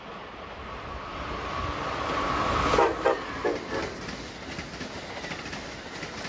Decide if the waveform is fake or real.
real